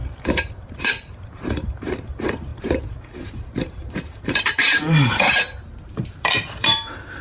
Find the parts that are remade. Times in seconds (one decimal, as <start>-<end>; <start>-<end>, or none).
0.0-7.2